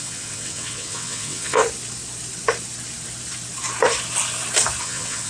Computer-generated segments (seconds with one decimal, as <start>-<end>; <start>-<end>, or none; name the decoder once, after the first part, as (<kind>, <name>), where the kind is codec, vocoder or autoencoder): 0.0-1.6 (vocoder, WaveNeXt); 4.8-5.3

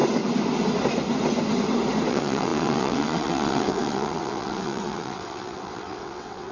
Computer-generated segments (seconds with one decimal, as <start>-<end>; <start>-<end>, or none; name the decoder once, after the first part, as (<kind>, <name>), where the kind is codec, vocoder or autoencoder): 2.1-6.5 (vocoder, WaveNeXt)

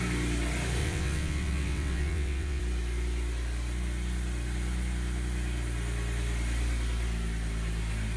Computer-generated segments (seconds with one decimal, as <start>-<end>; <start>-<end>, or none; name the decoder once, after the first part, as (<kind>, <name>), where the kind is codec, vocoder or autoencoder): 0.8-2.6 (vocoder, WaveNeXt)

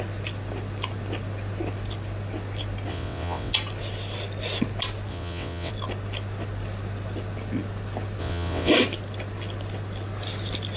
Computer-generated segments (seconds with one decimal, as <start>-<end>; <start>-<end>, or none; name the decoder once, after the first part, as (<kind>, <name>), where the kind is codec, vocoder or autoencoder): 2.9-3.5 (vocoder, WaveNeXt); 5.1-5.7; 8.2-8.7

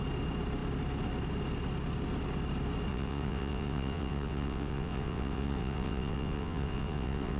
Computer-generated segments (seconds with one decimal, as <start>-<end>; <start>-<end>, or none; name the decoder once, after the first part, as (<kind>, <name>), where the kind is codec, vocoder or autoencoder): 2.9-7.4 (vocoder, WaveNeXt)

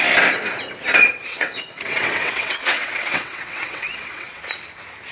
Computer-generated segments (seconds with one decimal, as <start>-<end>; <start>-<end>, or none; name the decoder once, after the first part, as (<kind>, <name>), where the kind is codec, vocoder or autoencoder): 1.3-4.4 (vocoder, WaveNeXt)